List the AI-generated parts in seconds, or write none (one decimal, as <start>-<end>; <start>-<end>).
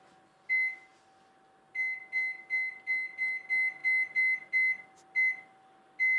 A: none